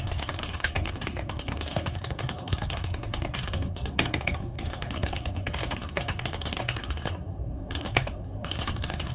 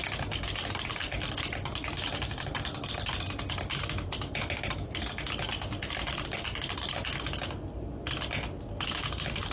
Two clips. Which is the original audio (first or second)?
second